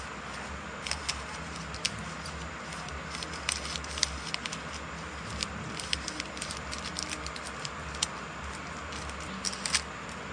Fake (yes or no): no